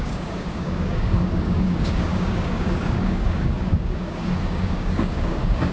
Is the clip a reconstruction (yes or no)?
yes